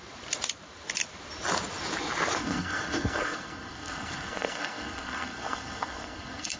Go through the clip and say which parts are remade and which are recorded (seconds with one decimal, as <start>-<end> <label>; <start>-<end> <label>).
0.0-2.4 recorded; 2.4-6.6 remade